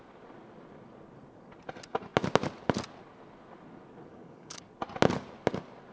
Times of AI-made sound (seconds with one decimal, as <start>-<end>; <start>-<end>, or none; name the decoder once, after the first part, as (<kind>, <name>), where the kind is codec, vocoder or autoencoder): 4.1-4.6 (codec, DAC)